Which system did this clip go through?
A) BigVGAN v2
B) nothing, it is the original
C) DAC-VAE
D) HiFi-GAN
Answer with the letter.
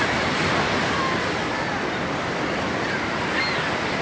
B